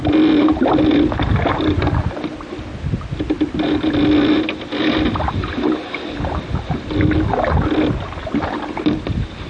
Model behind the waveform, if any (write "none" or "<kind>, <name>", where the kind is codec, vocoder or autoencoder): none